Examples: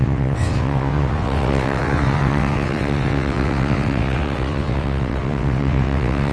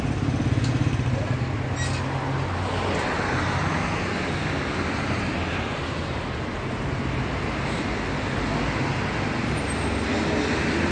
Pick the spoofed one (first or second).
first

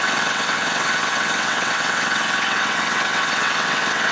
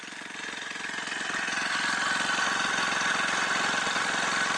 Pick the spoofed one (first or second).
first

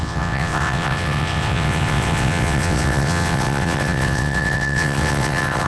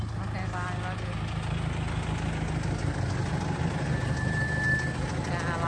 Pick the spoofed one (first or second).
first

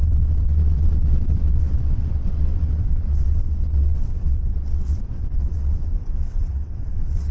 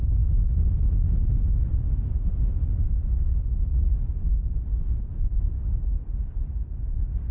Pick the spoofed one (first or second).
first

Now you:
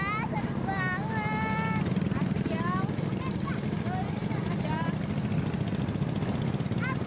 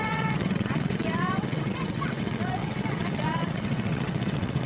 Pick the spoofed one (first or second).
second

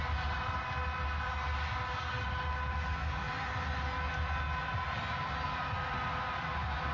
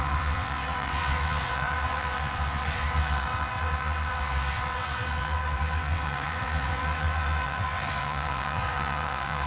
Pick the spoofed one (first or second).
second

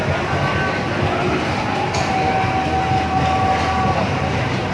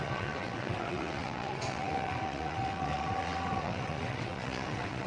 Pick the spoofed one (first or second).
second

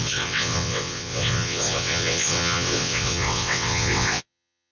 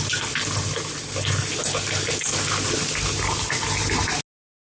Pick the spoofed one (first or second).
first